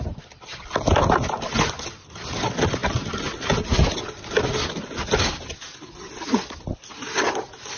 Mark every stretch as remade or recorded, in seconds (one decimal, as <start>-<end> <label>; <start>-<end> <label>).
0.0-7.8 recorded